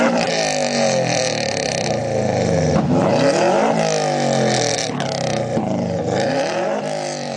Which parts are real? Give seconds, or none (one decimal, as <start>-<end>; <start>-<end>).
2.0-4.7